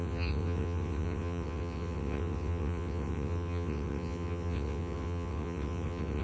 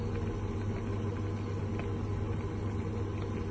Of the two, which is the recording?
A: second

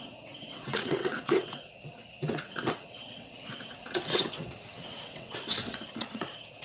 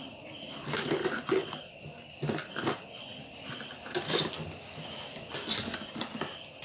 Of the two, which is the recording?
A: second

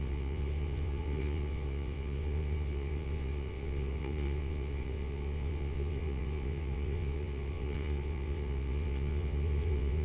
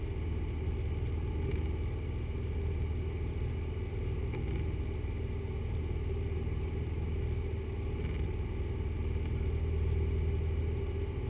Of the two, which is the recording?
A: second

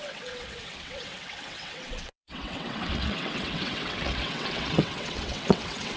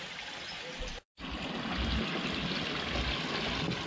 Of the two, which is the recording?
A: second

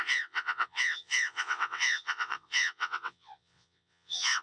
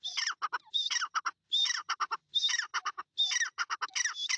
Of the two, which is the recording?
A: second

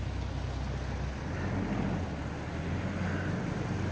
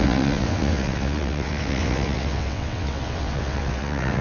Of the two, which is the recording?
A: first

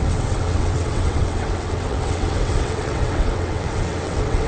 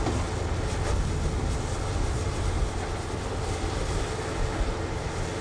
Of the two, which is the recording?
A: second